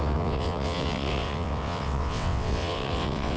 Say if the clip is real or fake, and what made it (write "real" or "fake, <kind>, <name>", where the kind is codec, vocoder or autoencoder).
fake, vocoder, WaveNeXt